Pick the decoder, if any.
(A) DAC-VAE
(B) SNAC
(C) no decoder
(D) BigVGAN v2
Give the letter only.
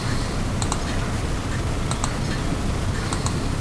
D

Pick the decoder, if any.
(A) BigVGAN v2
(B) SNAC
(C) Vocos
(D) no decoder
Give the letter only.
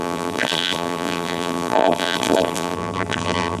A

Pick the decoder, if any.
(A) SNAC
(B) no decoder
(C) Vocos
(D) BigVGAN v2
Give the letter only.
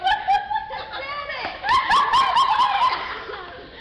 B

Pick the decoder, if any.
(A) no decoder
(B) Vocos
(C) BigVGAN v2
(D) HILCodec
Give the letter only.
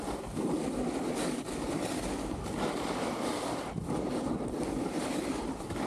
A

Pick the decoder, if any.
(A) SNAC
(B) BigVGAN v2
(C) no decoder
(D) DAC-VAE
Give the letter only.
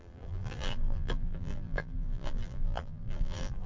B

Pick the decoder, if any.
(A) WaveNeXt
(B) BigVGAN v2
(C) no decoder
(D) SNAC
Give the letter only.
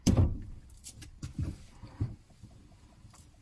B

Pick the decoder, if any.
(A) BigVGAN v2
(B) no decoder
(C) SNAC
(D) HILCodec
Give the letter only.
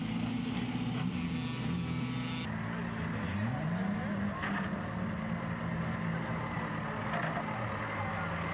B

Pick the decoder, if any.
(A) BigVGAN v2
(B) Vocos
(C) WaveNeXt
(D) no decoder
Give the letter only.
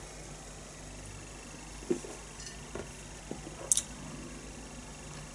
D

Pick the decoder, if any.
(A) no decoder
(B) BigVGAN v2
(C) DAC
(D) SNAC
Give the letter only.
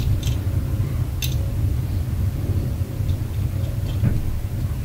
A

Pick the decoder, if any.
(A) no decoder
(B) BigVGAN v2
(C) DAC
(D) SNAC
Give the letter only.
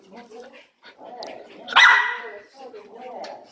A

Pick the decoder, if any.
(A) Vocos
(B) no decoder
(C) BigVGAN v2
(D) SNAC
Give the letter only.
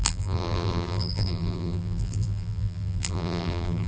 C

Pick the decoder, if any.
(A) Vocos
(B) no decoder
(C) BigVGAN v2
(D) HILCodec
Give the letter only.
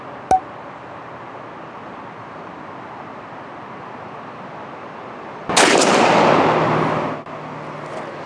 B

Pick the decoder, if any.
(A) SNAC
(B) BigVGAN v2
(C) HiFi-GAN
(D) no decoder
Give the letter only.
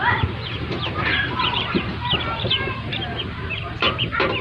B